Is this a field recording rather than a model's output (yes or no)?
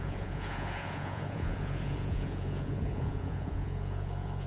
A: no